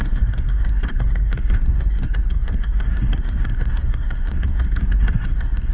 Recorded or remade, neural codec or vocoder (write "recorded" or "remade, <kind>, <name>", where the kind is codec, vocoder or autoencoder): remade, codec, SNAC